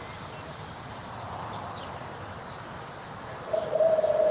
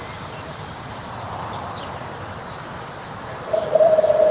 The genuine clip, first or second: first